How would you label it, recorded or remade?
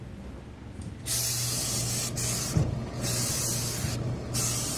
recorded